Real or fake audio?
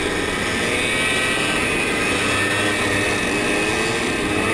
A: real